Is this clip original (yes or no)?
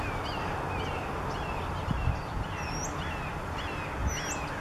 yes